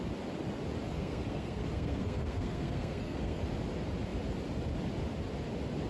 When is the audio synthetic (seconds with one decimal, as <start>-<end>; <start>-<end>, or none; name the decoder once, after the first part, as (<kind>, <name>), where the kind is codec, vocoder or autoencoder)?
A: 0.9-3.4 (codec, SNAC)